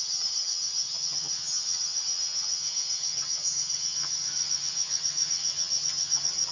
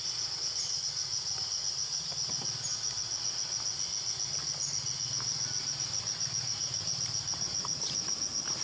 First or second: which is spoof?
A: first